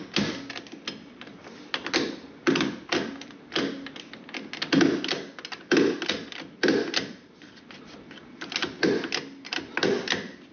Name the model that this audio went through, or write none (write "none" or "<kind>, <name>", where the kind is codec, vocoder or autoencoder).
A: none